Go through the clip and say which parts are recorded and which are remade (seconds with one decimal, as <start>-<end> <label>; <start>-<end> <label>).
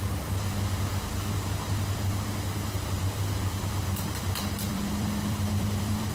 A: 0.0-4.7 recorded; 4.7-6.1 remade